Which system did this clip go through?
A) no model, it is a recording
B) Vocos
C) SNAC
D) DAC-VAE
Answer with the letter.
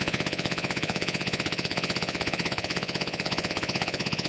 B